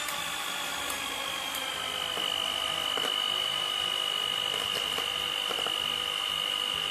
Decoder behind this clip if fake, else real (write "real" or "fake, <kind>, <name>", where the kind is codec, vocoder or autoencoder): real